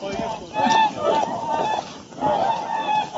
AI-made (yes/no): no